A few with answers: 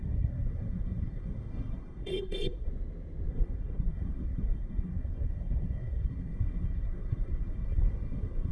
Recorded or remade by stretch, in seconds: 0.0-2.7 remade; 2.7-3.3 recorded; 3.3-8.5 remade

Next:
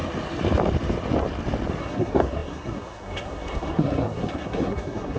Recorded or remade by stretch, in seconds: 0.0-1.8 recorded; 1.8-5.2 remade